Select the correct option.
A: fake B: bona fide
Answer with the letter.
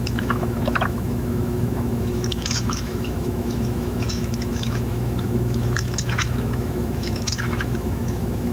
A